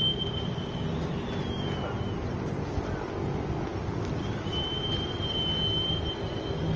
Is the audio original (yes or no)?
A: yes